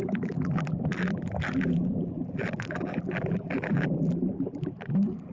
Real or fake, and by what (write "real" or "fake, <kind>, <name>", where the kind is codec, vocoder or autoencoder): fake, vocoder, BigVGAN v2